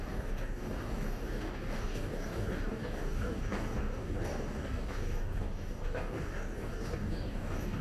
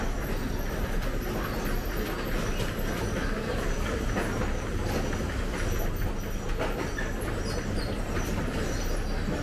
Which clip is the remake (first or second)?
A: first